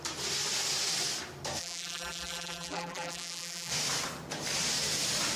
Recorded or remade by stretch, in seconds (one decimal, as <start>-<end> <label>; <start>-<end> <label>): 0.0-1.6 recorded; 1.6-3.7 remade; 3.7-5.4 recorded